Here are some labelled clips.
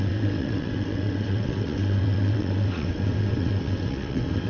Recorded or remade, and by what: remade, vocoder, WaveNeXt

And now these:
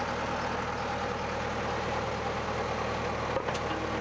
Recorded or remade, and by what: recorded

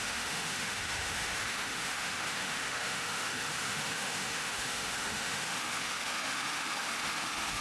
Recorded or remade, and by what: remade, autoencoder, DAC-VAE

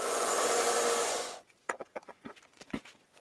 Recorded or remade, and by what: remade, vocoder, Vocos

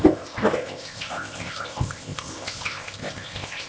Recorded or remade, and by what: remade, codec, ZipCodec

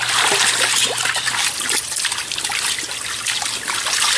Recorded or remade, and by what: recorded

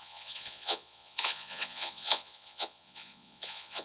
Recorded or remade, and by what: remade, vocoder, Vocos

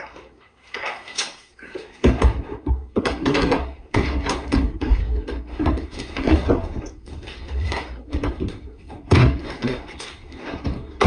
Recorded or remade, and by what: remade, codec, SNAC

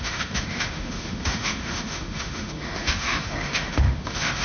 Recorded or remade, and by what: remade, autoencoder, DAC-VAE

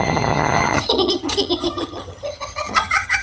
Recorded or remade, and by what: remade, vocoder, HiFi-GAN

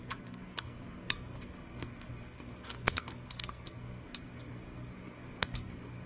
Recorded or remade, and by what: remade, codec, SNAC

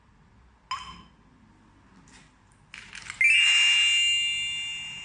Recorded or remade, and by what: recorded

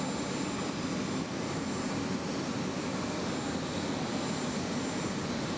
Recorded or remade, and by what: recorded